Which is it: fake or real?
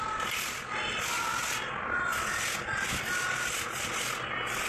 real